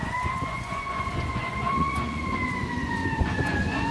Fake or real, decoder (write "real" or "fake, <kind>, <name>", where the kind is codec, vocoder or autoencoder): fake, vocoder, Vocos